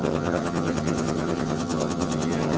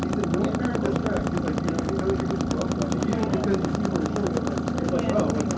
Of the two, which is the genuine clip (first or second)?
second